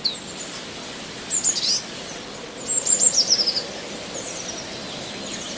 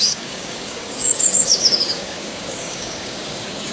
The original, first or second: first